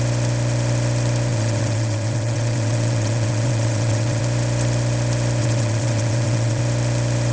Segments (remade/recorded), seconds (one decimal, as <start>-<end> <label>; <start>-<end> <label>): 0.0-1.3 recorded; 1.3-4.2 remade; 4.2-5.4 recorded; 5.4-6.6 remade; 6.6-7.3 recorded